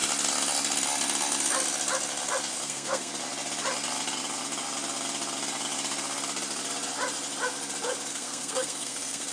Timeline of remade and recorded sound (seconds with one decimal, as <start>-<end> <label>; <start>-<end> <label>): 0.0-2.5 recorded; 2.5-3.1 remade; 3.1-8.1 recorded; 8.1-9.3 remade